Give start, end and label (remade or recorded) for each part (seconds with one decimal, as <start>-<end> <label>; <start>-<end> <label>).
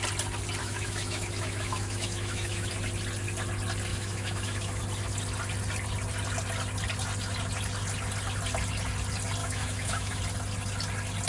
0.0-0.6 recorded; 0.6-2.7 remade; 2.7-3.9 recorded; 3.9-4.8 remade; 4.8-9.4 recorded; 9.4-10.2 remade; 10.2-11.3 recorded